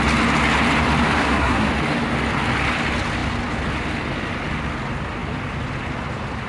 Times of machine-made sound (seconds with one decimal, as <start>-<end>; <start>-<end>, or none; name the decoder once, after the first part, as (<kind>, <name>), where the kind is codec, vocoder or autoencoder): 1.2-1.7 (codec, SNAC)